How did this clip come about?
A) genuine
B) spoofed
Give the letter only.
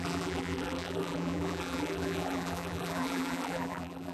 B